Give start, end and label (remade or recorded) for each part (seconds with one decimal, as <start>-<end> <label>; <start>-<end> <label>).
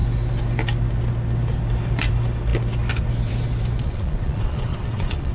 0.0-3.8 recorded; 3.8-5.3 remade